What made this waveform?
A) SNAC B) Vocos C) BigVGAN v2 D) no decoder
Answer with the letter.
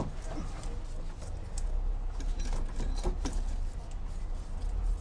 D